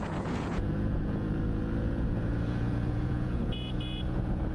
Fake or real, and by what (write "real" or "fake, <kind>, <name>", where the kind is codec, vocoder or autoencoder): fake, vocoder, Vocos